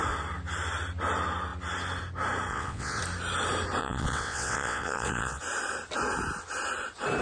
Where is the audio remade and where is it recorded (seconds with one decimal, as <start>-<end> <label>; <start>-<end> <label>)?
0.0-2.5 recorded; 2.5-3.0 remade; 3.0-3.8 recorded; 3.8-5.4 remade; 5.4-7.2 recorded